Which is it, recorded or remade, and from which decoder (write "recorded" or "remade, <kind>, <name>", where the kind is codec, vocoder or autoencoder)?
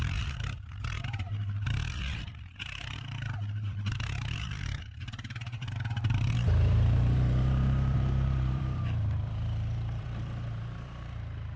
remade, vocoder, BigVGAN v2